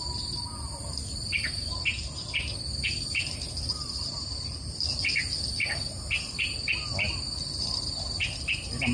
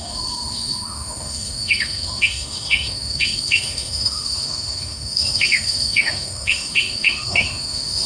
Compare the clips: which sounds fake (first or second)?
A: second